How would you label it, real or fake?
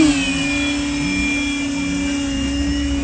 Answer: real